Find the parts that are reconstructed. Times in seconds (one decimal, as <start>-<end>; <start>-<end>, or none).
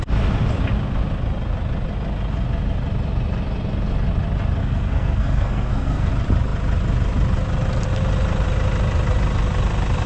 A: 4.6-6.1